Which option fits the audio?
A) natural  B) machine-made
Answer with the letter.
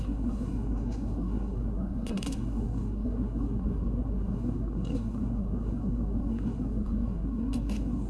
B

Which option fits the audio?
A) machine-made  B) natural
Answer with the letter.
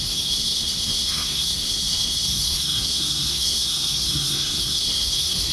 A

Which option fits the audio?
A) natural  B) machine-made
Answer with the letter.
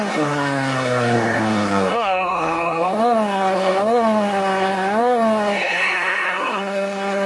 B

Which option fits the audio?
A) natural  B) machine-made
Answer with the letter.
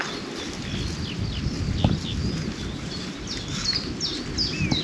A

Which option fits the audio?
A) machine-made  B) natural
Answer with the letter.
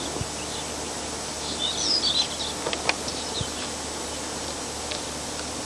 B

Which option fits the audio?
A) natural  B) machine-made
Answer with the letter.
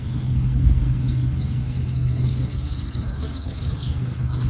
B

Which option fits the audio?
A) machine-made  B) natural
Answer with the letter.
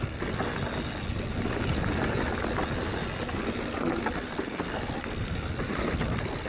B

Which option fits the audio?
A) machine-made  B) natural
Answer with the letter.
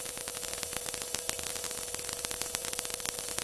B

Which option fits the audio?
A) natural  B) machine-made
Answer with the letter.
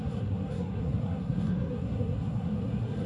B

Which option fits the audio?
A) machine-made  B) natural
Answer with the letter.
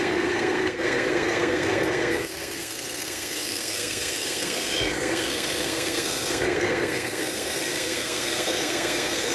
A